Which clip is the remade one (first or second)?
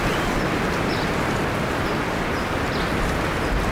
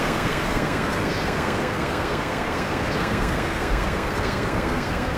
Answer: second